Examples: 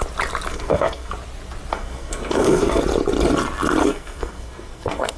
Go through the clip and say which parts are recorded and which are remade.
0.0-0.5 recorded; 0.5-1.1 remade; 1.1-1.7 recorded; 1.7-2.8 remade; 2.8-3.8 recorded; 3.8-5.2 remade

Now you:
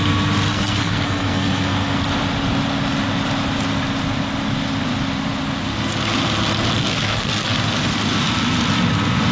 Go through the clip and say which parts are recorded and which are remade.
0.0-0.5 recorded; 0.5-2.0 remade; 2.0-6.8 recorded; 6.8-7.5 remade; 7.5-9.3 recorded

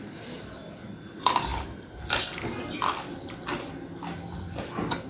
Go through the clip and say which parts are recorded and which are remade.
0.0-5.1 recorded

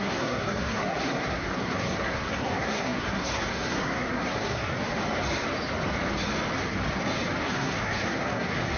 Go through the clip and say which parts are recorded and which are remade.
0.0-4.7 remade; 4.7-7.4 recorded; 7.4-8.8 remade